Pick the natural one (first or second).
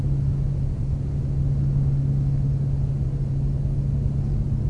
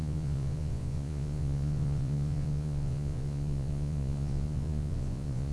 first